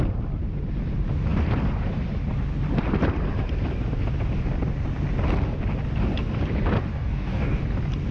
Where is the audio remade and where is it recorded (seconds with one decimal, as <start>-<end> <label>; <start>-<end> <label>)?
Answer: 0.0-6.9 recorded; 6.9-7.6 remade; 7.6-8.1 recorded